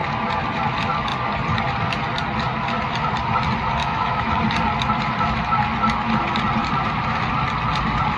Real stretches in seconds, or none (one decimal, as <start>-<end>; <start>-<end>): 0.0-3.8; 4.4-8.2

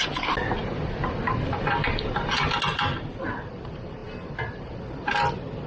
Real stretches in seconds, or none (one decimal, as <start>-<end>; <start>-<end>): 0.0-5.7

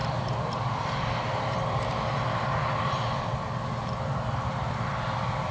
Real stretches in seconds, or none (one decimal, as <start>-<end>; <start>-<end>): 3.3-5.5

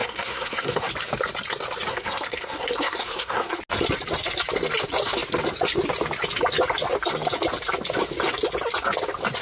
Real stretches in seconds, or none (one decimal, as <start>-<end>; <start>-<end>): 0.9-1.9; 3.6-9.4

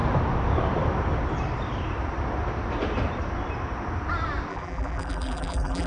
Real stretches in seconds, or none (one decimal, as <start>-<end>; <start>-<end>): 0.0-4.5